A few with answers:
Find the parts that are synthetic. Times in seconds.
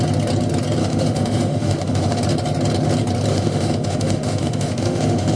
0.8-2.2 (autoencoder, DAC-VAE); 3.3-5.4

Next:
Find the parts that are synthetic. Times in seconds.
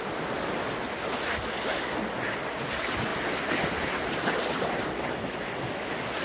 none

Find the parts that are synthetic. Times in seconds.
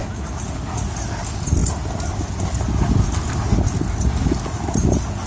none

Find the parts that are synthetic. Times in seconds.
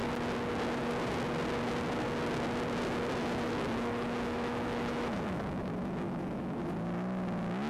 3.2-6.6 (autoencoder, DAC-VAE)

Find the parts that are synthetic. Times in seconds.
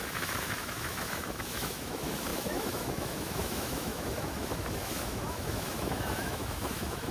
0.0-7.1 (autoencoder, DAC-VAE)